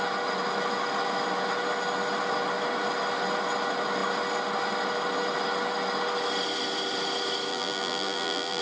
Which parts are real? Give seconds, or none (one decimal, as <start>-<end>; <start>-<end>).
0.0-7.5